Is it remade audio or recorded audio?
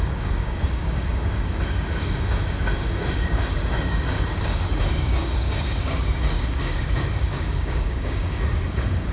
remade